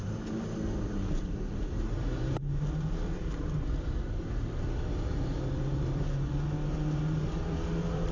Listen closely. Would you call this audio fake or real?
fake